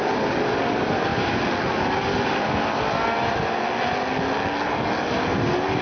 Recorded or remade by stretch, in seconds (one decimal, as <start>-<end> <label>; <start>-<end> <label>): 0.0-5.8 recorded